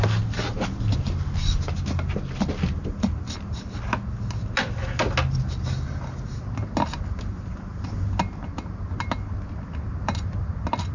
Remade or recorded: recorded